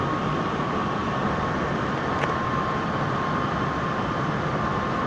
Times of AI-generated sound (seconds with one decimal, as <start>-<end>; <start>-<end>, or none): none